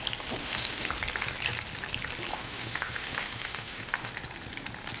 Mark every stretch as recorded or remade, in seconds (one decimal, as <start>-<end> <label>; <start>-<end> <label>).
0.0-0.4 recorded; 0.4-0.9 remade; 0.9-2.3 recorded; 2.3-4.1 remade; 4.1-5.0 recorded